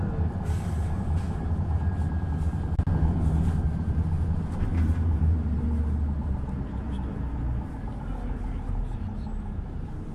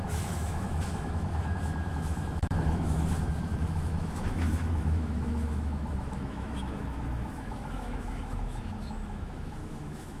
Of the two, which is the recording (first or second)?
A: first